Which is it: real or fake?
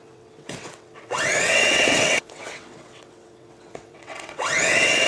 fake